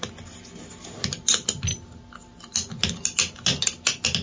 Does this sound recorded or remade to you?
recorded